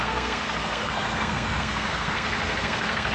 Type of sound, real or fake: fake